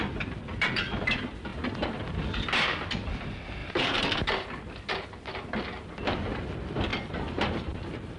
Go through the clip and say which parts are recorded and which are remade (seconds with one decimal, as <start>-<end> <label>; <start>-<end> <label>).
0.0-3.6 recorded; 3.6-4.1 remade; 4.1-6.9 recorded; 6.9-7.7 remade; 7.7-8.2 recorded